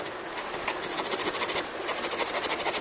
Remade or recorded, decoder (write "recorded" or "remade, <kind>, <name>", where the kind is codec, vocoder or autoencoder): recorded